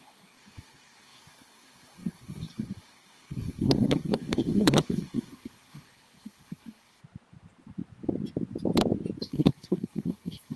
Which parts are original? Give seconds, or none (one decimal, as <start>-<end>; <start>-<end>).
7.0-9.2